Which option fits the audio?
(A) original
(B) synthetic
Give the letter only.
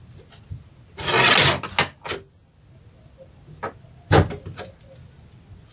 A